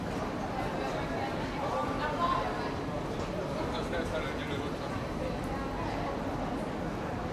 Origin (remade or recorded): recorded